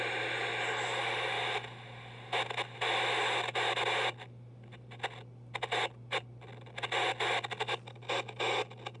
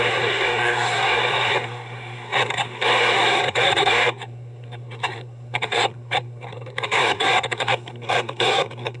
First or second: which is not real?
second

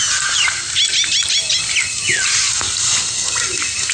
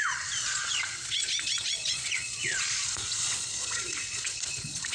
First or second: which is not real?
second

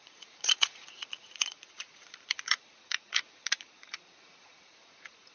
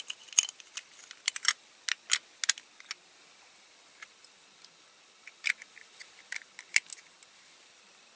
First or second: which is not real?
first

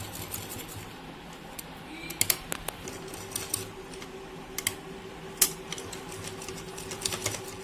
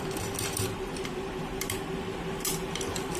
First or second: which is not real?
second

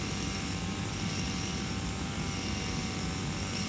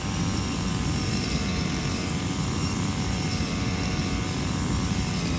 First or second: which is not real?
second